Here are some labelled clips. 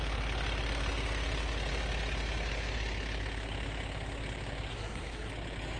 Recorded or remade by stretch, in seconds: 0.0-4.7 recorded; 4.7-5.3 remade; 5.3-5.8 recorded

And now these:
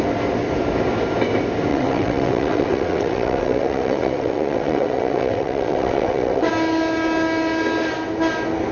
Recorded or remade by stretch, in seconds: 0.0-1.7 recorded; 1.7-6.5 remade; 6.5-8.7 recorded

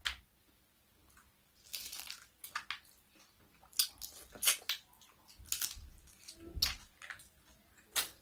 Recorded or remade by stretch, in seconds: 0.0-8.2 recorded

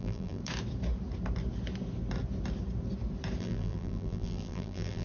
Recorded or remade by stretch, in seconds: 0.0-0.4 remade; 0.4-3.4 recorded; 3.4-5.0 remade

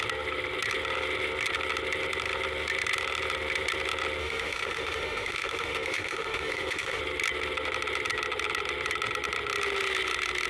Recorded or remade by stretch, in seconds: 0.0-4.2 recorded; 4.2-7.0 remade; 7.0-10.5 recorded

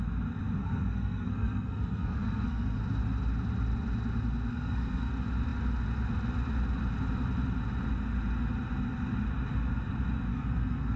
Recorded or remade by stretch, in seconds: 0.0-0.6 recorded; 0.6-2.8 remade; 2.8-4.5 recorded; 4.5-5.1 remade; 5.1-10.3 recorded; 10.3-11.0 remade

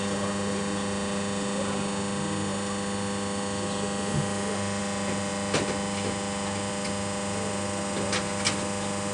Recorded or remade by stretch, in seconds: 0.0-9.1 recorded